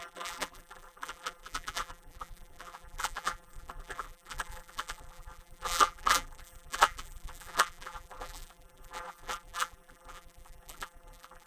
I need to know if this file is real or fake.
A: fake